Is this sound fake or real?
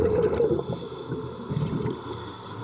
real